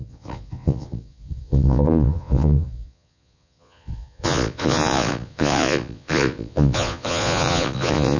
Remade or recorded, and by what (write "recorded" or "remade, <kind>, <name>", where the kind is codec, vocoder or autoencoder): remade, vocoder, Vocos